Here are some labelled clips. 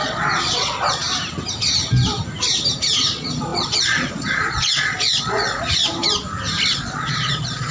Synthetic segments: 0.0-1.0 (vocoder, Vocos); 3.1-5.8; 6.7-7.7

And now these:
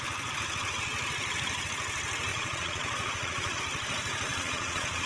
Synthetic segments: 2.3-3.6 (vocoder, Vocos); 4.3-5.1